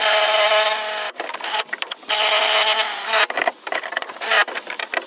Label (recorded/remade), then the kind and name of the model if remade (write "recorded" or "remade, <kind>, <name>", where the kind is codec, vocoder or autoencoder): recorded